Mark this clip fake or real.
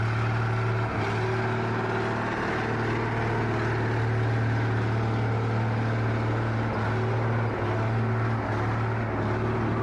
real